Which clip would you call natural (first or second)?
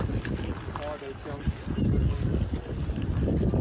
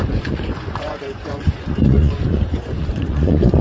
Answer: first